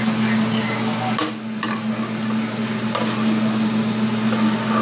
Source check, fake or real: real